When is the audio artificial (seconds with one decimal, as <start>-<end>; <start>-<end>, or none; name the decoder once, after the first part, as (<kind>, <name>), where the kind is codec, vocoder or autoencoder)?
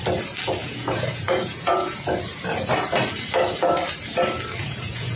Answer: 0.6-2.2 (vocoder, Vocos); 4.6-5.2